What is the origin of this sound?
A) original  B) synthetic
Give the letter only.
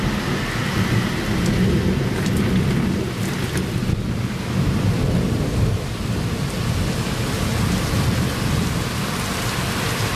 A